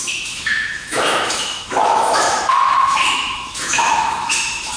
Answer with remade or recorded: remade